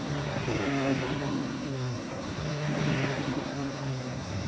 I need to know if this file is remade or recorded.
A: remade